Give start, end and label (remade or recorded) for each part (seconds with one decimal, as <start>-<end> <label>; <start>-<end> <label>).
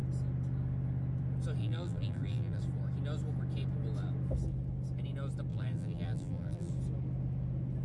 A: 0.0-1.6 recorded; 1.6-2.6 remade; 2.6-5.5 recorded; 5.5-6.7 remade; 6.7-7.8 recorded